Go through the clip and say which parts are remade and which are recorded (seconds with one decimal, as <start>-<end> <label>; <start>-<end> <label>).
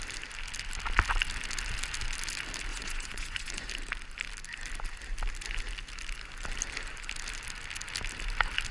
0.0-2.7 recorded; 2.7-3.7 remade; 3.7-8.7 recorded